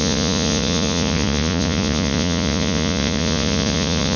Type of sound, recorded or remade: remade